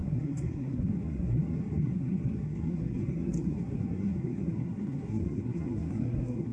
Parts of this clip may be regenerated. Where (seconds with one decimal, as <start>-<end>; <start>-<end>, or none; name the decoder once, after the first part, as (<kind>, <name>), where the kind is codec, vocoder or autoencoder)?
0.0-6.5 (codec, SNAC)